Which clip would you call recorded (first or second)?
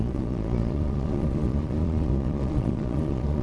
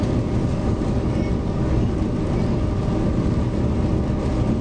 second